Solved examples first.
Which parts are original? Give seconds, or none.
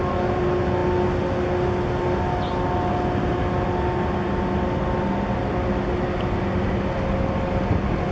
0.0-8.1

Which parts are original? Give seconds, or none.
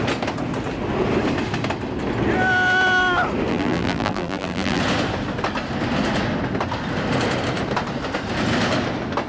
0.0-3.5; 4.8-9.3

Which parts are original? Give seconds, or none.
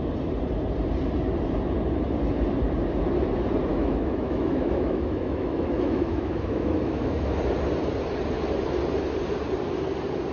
0.0-3.7; 7.4-10.3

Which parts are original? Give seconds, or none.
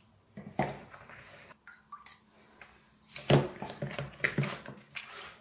0.0-3.2; 3.8-5.4